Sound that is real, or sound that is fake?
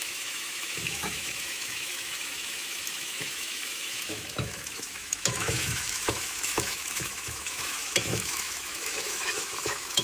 fake